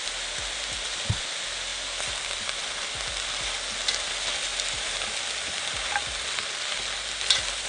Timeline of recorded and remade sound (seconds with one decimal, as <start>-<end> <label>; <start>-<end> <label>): 0.0-7.7 recorded